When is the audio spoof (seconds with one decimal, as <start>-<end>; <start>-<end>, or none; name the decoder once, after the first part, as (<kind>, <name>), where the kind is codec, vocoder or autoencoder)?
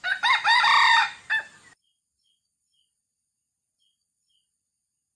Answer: none